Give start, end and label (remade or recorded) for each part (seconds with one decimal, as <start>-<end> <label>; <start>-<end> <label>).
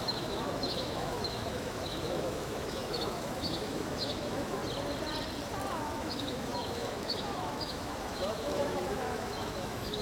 0.0-4.6 remade; 4.6-5.7 recorded; 5.7-10.0 remade